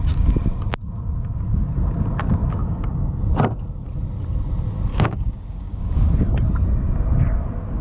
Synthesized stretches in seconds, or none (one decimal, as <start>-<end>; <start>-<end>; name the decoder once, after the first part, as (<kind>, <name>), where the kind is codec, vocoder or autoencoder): 2.6-3.2 (codec, DAC); 4.9-5.8